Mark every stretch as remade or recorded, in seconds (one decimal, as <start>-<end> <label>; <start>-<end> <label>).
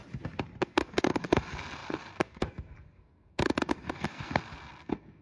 0.0-0.6 recorded; 0.6-5.2 remade